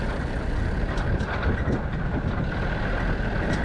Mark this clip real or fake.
real